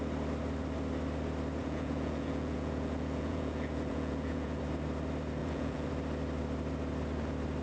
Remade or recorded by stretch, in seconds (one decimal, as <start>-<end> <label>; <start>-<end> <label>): 0.0-1.6 recorded; 1.6-4.6 remade; 4.6-5.4 recorded; 5.4-5.9 remade; 5.9-7.6 recorded